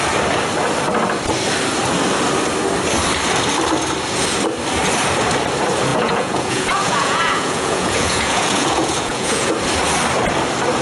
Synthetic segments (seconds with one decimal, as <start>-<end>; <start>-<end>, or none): 5.9-9.5